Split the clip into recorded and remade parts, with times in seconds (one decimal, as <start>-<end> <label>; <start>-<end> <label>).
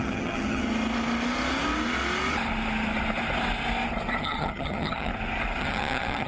0.0-0.6 remade; 0.6-4.2 recorded; 4.2-5.1 remade; 5.1-5.6 recorded; 5.6-6.3 remade